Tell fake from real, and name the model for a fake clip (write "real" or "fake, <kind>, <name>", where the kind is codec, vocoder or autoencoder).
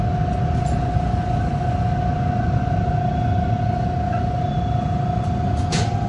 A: real